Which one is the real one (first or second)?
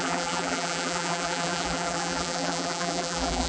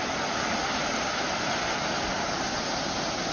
second